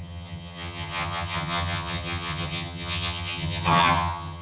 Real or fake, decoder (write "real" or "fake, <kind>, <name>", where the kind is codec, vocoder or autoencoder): fake, vocoder, HiFi-GAN